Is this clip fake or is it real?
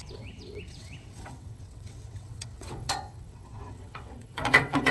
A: fake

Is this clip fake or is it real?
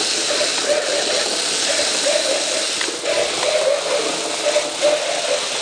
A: real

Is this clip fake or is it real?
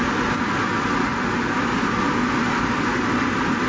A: real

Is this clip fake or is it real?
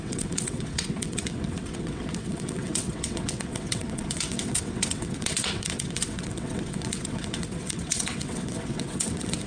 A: fake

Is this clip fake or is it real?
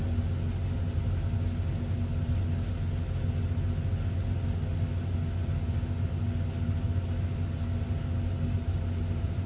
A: real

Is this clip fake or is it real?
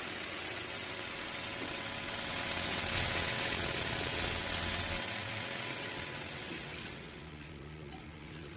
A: fake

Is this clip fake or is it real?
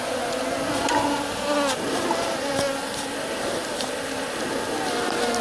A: real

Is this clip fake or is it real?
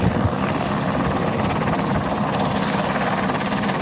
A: real